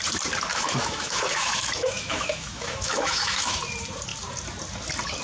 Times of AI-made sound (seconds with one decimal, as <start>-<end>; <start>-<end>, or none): 0.5-3.6